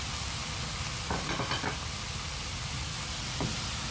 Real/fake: real